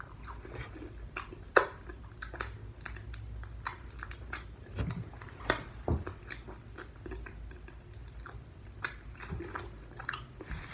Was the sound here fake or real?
real